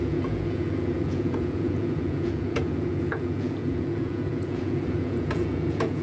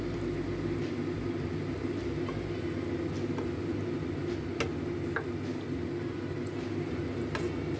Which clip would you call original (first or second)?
second